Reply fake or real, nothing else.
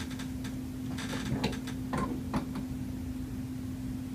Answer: real